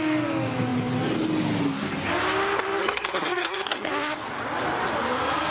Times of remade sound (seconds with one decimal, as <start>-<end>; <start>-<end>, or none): 2.8-3.9